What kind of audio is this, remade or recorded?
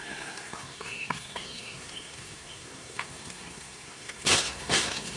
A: remade